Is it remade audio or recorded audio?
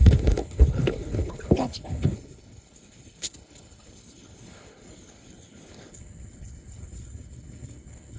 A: remade